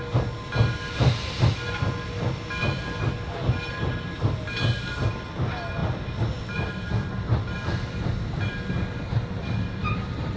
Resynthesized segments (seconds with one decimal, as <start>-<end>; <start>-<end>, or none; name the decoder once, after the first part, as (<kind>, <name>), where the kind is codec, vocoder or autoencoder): none